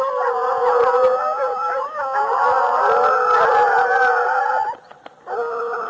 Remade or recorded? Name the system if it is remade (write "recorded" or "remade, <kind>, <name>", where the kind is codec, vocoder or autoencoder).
recorded